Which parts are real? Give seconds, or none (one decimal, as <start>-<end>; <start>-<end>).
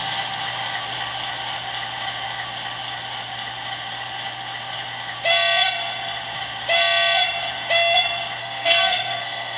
0.0-8.4